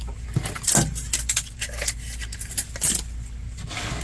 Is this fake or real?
real